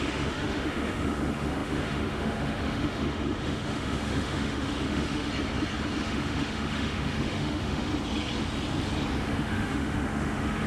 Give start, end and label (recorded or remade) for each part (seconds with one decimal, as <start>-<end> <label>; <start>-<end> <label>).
0.0-5.3 remade; 5.3-6.0 recorded; 6.0-7.9 remade; 7.9-9.2 recorded; 9.2-10.7 remade